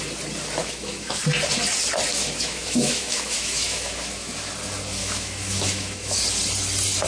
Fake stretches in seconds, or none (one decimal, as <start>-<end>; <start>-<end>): 0.6-1.2; 2.1-4.5; 5.0-6.2